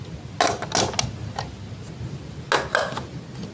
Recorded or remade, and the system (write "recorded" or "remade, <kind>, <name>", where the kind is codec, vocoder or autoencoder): recorded